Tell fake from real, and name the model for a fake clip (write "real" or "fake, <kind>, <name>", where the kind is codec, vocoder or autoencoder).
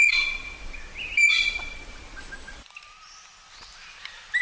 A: real